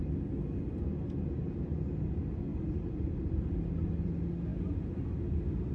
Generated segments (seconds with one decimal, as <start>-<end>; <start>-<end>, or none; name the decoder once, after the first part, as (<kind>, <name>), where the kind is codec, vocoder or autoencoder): 0.0-0.6 (vocoder, BigVGAN v2); 2.5-3.1; 4.5-5.2